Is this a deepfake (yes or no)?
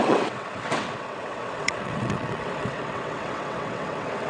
yes